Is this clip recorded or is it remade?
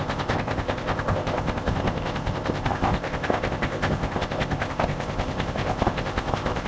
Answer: remade